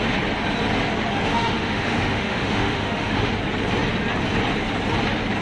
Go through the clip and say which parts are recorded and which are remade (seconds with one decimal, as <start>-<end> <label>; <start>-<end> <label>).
0.0-1.3 recorded; 1.3-3.3 remade; 3.3-5.4 recorded